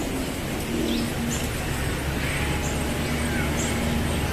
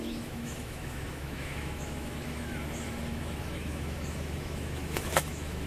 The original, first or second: first